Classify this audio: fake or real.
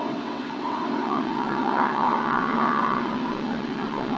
fake